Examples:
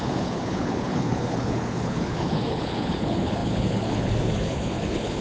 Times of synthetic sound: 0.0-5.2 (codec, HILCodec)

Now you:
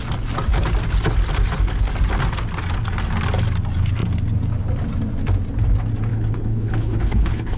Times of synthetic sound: 6.1-7.6 (codec, HILCodec)

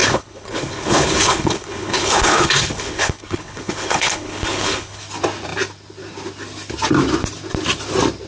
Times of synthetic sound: 0.0-5.0 (codec, HILCodec)

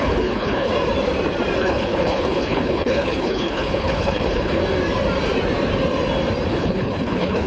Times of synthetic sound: 0.0-0.7 (codec, HILCodec); 1.6-4.6; 6.5-7.5

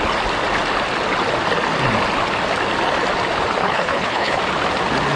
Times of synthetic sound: 3.6-4.4 (codec, HILCodec)